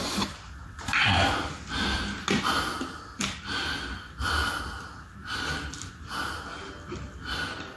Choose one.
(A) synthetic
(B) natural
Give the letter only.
B